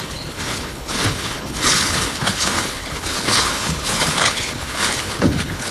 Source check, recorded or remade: remade